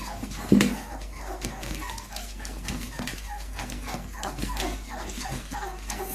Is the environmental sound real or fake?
fake